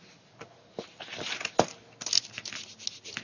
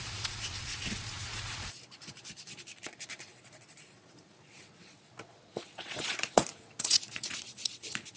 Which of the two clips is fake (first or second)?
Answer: second